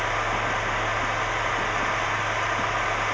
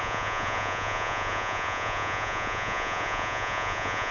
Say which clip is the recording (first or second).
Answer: first